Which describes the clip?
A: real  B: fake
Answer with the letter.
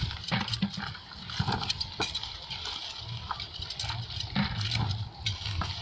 A